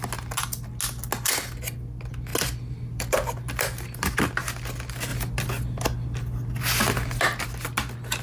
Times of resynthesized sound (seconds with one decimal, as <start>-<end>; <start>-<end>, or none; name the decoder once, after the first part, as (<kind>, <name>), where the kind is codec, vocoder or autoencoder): none